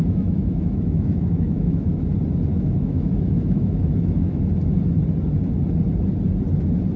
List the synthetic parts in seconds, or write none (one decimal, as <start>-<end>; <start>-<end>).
0.0-2.1; 2.5-4.4